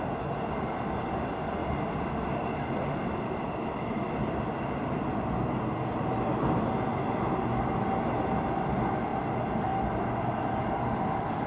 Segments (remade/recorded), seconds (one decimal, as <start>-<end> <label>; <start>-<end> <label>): 0.0-1.6 recorded; 1.6-4.6 remade; 4.6-9.1 recorded; 9.1-10.2 remade; 10.2-11.5 recorded